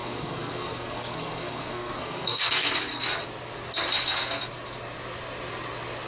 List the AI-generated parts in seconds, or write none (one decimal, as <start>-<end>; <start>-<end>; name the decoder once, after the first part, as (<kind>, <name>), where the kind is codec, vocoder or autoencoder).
0.0-2.7 (codec, SNAC)